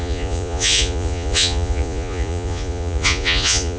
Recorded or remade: remade